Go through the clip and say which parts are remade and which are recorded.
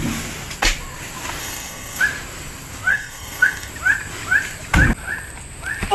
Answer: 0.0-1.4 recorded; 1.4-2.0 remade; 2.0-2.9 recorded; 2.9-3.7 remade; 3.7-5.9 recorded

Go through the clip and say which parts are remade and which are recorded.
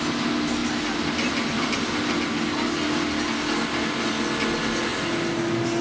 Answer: 0.0-5.8 recorded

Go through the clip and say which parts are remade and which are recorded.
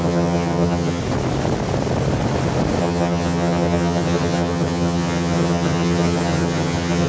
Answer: 0.0-1.0 remade; 1.0-2.8 recorded; 2.8-7.1 remade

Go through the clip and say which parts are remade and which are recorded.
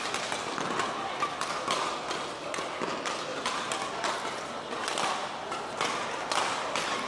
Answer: 0.0-7.1 recorded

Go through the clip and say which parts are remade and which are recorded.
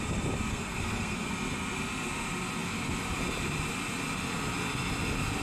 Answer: 0.0-0.5 recorded; 0.5-1.3 remade; 1.3-5.4 recorded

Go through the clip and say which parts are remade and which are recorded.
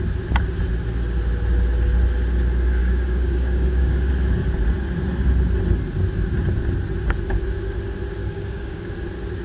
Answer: 0.0-2.8 recorded; 2.8-4.1 remade; 4.1-8.2 recorded; 8.2-8.9 remade; 8.9-9.4 recorded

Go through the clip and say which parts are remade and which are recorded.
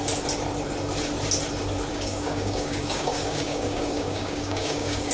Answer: 0.0-1.9 recorded; 1.9-5.1 remade